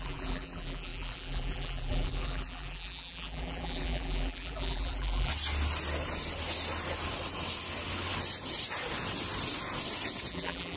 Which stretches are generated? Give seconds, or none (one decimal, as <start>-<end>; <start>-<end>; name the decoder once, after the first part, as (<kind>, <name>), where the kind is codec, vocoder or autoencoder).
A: 0.0-5.3 (vocoder, BigVGAN v2); 10.3-10.8